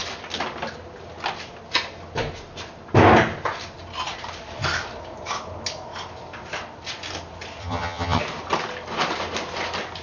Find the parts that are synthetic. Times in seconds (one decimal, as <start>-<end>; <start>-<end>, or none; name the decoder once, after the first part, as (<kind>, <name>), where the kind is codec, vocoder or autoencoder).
7.6-8.2 (vocoder, HiFi-GAN)